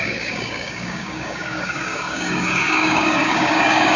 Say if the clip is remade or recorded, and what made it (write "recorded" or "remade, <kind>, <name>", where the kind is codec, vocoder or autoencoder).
remade, codec, DAC